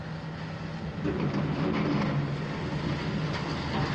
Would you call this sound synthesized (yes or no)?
no